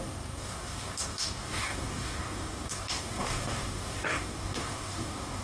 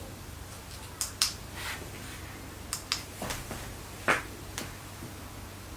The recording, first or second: second